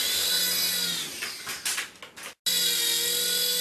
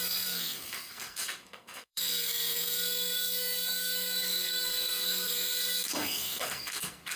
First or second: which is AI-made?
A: second